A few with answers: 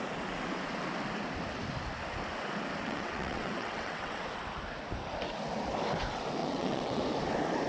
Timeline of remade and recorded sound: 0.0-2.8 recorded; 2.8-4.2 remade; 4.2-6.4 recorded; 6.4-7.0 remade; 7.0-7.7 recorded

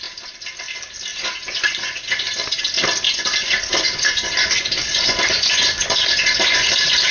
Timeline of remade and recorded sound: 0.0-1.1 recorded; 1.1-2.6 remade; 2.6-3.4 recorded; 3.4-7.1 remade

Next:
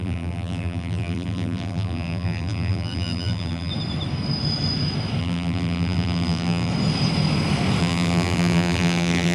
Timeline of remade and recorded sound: 0.0-3.7 remade; 3.7-5.2 recorded; 5.2-6.7 remade; 6.7-7.8 recorded; 7.8-9.3 remade